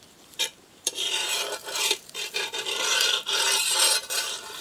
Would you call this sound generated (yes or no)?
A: yes